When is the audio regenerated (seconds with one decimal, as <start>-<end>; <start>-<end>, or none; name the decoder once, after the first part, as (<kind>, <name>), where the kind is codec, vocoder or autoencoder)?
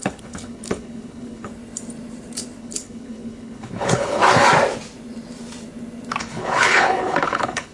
0.0-1.5 (codec, HILCodec); 2.6-4.2; 6.2-7.7